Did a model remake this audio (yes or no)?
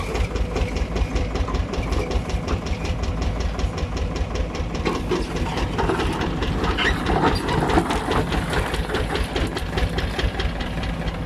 no